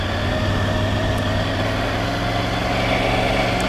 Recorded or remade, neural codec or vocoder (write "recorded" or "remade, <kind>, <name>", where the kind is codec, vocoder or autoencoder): recorded